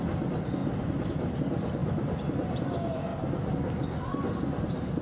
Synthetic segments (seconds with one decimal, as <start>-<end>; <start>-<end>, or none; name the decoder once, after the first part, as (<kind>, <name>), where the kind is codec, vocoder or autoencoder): none